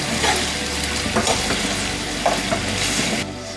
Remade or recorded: recorded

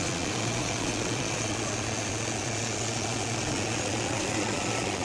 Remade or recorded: remade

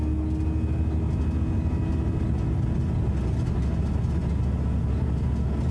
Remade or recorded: recorded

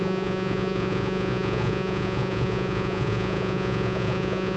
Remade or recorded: remade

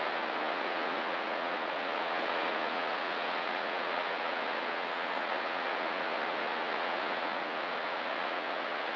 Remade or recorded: remade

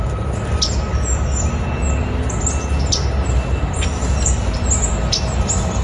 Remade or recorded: recorded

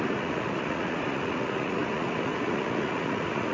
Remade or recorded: remade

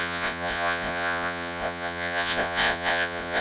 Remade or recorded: remade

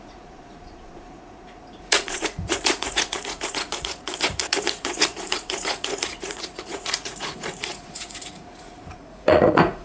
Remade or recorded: remade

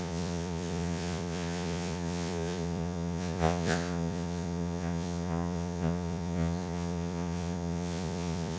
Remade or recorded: remade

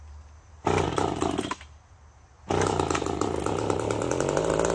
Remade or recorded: recorded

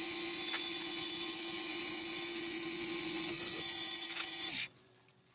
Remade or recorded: remade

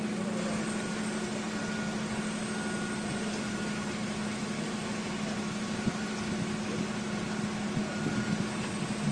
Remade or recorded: recorded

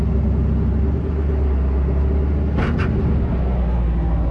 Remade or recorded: recorded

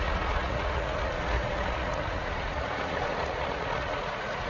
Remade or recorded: remade